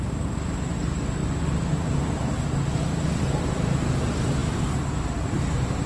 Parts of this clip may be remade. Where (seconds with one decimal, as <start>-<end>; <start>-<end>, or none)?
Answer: 0.0-5.9